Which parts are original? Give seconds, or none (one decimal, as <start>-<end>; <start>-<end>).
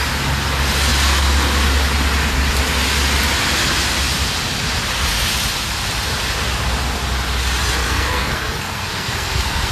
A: 0.0-7.8